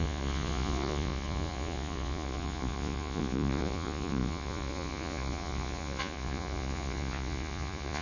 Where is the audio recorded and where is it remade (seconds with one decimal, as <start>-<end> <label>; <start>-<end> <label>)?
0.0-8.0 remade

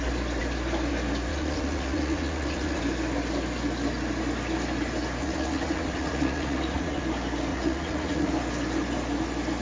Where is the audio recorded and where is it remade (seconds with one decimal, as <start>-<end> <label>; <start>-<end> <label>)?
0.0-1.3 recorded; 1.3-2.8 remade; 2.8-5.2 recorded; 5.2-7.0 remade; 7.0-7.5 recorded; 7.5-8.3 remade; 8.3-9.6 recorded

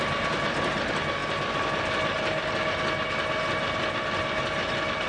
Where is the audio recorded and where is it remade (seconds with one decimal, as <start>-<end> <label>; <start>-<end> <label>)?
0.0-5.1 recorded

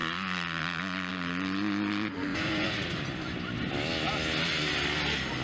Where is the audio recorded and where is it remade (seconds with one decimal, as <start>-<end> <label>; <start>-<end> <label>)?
0.0-2.3 recorded; 2.3-3.0 remade; 3.0-5.4 recorded